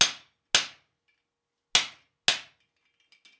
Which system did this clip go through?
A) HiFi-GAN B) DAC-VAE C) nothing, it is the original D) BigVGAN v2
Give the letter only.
C